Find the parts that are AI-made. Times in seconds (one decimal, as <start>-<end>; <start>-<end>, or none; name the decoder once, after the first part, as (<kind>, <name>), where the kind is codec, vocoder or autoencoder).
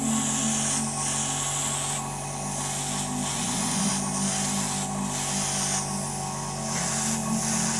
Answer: 3.3-3.9 (vocoder, Vocos)